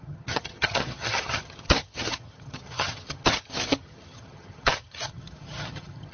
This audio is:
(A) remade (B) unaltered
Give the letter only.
A